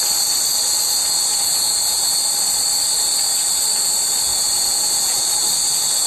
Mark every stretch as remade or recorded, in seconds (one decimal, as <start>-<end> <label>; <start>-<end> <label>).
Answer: 0.0-1.3 recorded; 1.3-2.2 remade; 2.2-4.3 recorded; 4.3-5.3 remade; 5.3-6.1 recorded